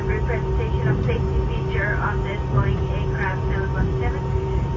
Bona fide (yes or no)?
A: yes